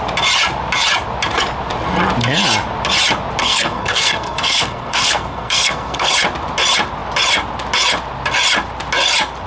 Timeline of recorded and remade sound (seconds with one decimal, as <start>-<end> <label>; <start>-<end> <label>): 0.0-3.4 recorded; 3.4-6.1 remade; 6.1-9.5 recorded